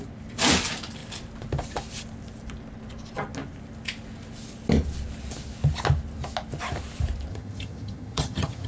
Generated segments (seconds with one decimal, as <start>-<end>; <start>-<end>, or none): 7.3-8.7